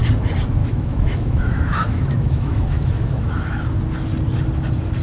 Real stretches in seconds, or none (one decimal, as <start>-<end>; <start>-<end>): 0.0-0.6; 3.6-5.0